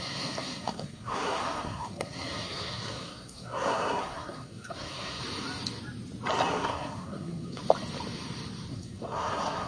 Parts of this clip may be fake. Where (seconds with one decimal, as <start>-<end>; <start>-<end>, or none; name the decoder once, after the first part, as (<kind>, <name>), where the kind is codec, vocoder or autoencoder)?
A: 0.0-5.2 (codec, SNAC); 6.5-7.6; 8.7-9.7